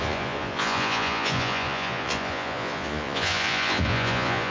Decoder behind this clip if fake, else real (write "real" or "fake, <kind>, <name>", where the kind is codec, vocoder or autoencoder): fake, vocoder, Vocos